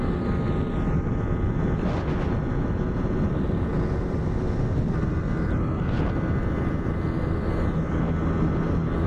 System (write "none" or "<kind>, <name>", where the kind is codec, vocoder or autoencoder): none